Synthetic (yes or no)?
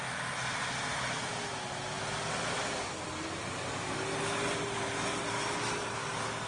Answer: no